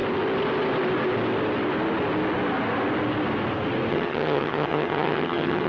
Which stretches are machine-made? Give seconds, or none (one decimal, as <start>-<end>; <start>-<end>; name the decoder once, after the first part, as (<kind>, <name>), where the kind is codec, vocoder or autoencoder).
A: 3.9-5.7 (vocoder, HiFi-GAN)